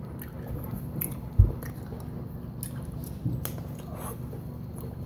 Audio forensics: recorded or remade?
recorded